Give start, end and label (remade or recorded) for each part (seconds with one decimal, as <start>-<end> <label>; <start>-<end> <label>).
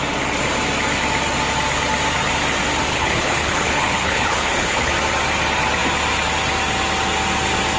0.0-2.9 recorded; 2.9-4.9 remade; 4.9-7.8 recorded